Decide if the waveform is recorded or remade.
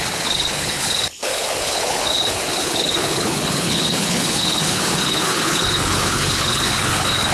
remade